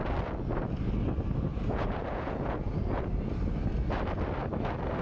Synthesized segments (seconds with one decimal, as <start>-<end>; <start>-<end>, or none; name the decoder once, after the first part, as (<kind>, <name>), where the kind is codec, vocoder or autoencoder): 1.5-3.1 (vocoder, Vocos)